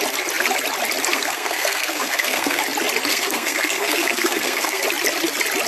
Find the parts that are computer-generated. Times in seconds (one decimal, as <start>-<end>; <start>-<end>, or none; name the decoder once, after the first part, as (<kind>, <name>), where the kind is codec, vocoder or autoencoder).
1.1-2.6 (codec, SNAC); 3.1-4.8